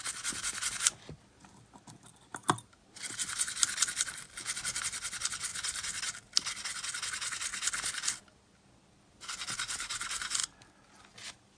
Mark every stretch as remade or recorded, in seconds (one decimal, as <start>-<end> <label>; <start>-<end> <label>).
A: 0.0-5.5 recorded; 5.5-6.2 remade; 6.2-10.4 recorded; 10.4-11.0 remade; 11.0-11.6 recorded

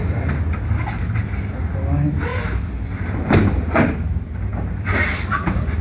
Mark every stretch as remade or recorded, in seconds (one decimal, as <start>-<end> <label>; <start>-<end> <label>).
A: 0.0-4.5 recorded; 4.5-5.8 remade

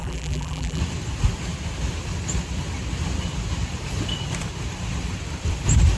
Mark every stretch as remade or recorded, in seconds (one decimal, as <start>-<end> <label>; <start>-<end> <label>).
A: 0.0-0.8 remade; 0.8-6.0 recorded

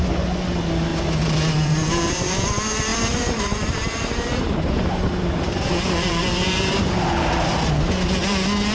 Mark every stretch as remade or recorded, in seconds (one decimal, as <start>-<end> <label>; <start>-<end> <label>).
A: 0.0-0.9 recorded; 0.9-2.5 remade; 2.5-2.9 recorded; 2.9-7.7 remade; 7.7-8.7 recorded

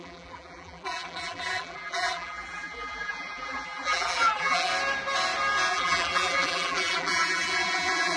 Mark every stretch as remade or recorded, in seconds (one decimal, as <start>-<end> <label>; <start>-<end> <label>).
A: 0.0-4.7 remade; 4.7-5.7 recorded; 5.7-8.2 remade

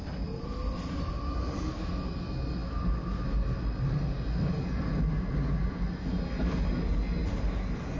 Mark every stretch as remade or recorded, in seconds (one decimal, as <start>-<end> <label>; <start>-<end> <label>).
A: 0.0-8.0 recorded

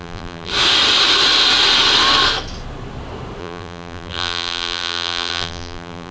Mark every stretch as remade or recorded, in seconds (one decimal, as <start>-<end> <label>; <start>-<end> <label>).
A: 0.0-0.5 remade; 0.5-3.4 recorded; 3.4-6.1 remade

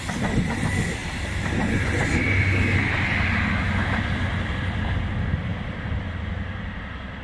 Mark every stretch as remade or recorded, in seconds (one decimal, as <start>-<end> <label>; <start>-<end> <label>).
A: 0.0-1.0 remade; 1.0-5.1 recorded; 5.1-7.2 remade